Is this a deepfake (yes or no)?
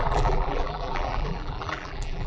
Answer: yes